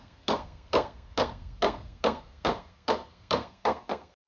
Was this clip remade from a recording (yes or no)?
yes